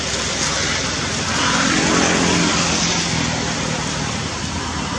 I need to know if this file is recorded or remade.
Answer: recorded